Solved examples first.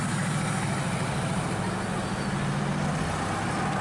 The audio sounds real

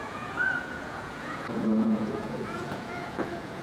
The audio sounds fake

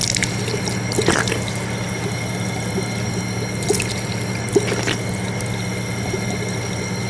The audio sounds real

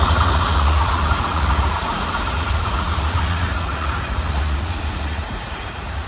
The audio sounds fake